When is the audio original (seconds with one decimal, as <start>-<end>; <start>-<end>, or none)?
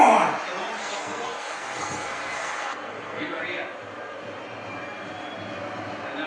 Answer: 0.0-0.8; 3.4-6.3